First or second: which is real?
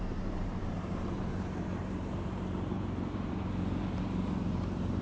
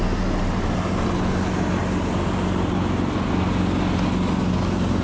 second